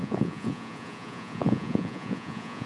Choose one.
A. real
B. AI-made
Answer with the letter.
B